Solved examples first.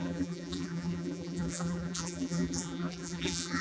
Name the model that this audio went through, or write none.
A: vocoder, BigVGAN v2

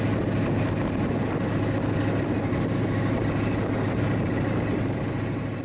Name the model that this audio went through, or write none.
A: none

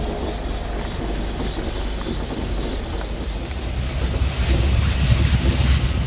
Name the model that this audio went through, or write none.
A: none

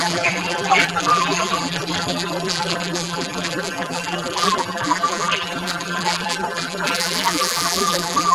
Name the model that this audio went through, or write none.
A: vocoder, BigVGAN v2